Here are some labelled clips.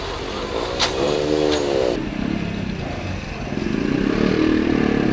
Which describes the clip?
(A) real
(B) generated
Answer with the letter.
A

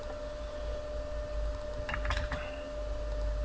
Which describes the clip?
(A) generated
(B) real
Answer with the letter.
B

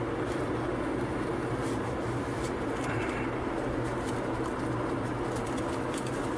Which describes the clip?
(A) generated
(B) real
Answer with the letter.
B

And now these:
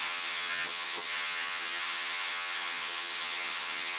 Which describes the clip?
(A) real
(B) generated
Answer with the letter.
B